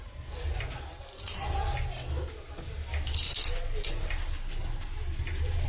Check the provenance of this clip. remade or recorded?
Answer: recorded